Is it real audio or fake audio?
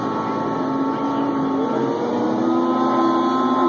real